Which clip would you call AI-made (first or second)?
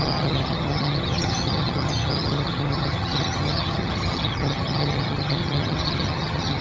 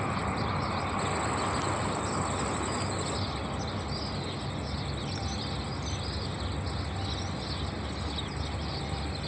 first